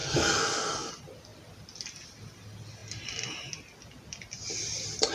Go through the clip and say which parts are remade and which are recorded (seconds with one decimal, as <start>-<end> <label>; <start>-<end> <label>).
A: 0.0-0.9 remade; 0.9-5.1 recorded